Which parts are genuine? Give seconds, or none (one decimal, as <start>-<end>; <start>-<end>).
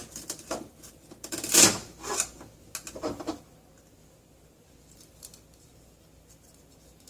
0.0-7.1